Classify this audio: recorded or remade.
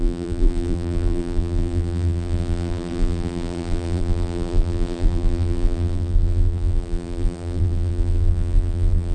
remade